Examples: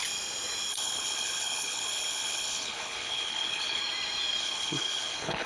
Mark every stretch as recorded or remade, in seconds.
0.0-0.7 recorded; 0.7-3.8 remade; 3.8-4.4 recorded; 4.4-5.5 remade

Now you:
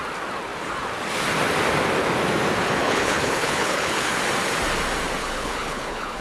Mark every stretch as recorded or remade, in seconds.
0.0-2.8 recorded; 2.8-4.2 remade; 4.2-5.2 recorded; 5.2-6.2 remade

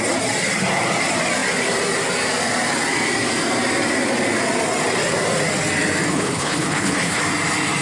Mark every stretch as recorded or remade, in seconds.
0.0-6.1 recorded; 6.1-7.2 remade; 7.2-7.8 recorded

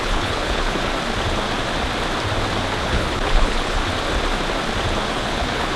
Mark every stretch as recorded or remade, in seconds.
0.0-0.9 remade; 0.9-2.8 recorded; 2.8-3.9 remade; 3.9-5.1 recorded; 5.1-5.8 remade

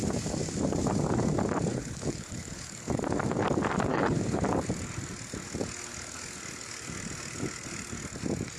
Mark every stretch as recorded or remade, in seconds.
0.0-1.7 recorded; 1.7-2.9 remade; 2.9-3.9 recorded; 3.9-4.4 remade; 4.4-8.6 recorded

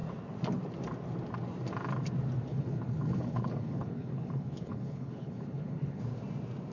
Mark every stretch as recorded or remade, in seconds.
0.0-2.5 recorded; 2.5-6.0 remade; 6.0-6.7 recorded

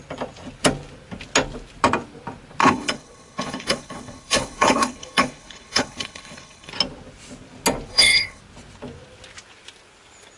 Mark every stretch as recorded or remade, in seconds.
0.0-2.6 recorded; 2.6-6.7 remade; 6.7-7.9 recorded; 7.9-8.4 remade; 8.4-10.4 recorded